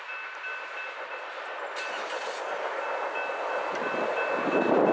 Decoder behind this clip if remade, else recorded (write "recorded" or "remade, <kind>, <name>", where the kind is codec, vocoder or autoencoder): recorded